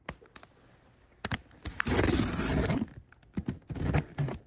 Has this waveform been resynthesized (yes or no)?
no